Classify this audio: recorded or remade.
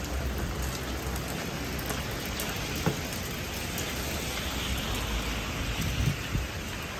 recorded